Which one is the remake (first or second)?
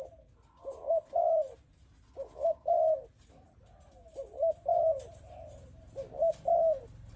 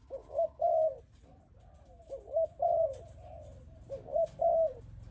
second